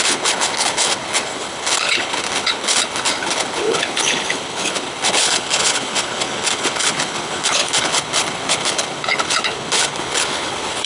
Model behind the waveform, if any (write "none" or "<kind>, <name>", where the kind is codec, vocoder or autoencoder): codec, HILCodec